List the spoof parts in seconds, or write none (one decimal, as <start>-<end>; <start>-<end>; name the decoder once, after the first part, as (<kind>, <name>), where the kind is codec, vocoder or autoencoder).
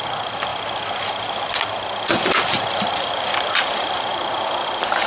0.0-0.5 (vocoder, BigVGAN v2); 2.5-5.1